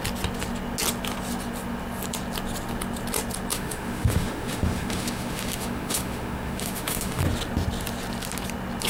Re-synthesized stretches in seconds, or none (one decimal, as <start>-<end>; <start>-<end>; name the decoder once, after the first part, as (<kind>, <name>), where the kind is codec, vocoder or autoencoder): 3.5-7.2 (autoencoder, DAC-VAE)